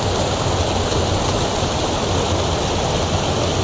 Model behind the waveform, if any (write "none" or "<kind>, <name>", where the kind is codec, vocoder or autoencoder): none